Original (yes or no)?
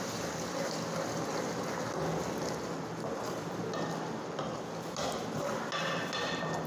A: yes